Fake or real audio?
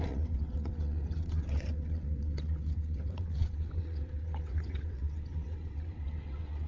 fake